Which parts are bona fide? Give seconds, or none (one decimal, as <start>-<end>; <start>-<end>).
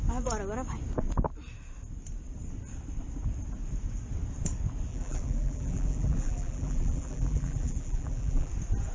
0.0-4.9; 8.5-8.9